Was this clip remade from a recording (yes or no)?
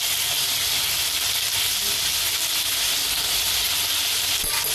no